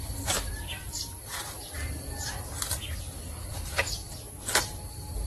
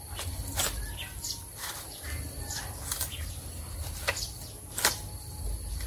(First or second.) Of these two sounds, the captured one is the second